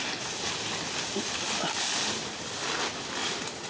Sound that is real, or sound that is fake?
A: real